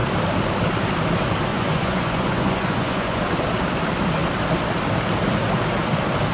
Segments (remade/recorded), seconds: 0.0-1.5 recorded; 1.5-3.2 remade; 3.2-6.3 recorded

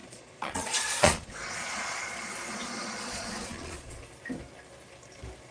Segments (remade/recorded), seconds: 0.0-4.0 remade; 4.0-5.5 recorded

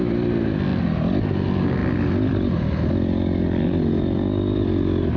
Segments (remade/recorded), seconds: 0.0-5.2 recorded

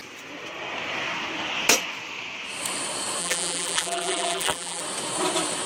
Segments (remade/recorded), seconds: 0.0-3.2 recorded; 3.2-4.8 remade; 4.8-5.7 recorded

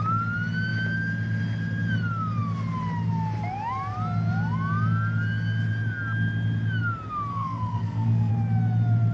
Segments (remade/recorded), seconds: 0.0-7.3 recorded; 7.3-8.3 remade; 8.3-9.1 recorded

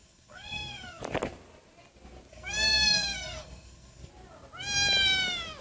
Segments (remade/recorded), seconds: 0.0-1.0 remade; 1.0-2.3 recorded; 2.3-4.1 remade; 4.1-5.6 recorded

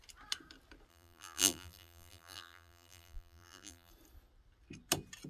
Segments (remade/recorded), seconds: 0.0-0.9 recorded; 0.9-3.9 remade; 3.9-5.3 recorded

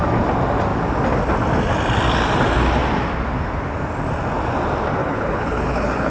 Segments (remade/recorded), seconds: 0.0-5.0 recorded; 5.0-6.1 remade